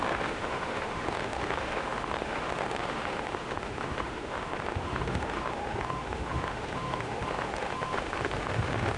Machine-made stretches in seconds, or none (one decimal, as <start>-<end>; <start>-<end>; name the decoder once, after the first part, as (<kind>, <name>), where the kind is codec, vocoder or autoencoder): 0.0-9.0 (autoencoder, DAC-VAE)